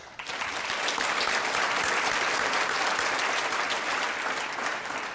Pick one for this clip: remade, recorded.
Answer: remade